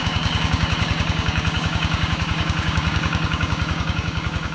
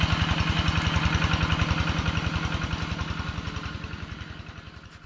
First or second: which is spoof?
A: first